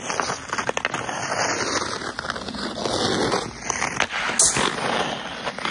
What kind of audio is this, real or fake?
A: real